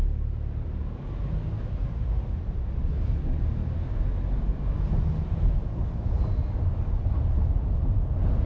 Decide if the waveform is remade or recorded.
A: recorded